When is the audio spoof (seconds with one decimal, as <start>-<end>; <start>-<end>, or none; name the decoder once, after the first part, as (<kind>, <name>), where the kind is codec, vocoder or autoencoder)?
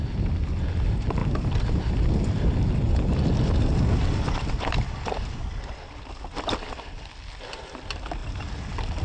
none